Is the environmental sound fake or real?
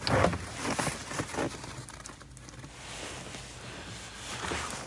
real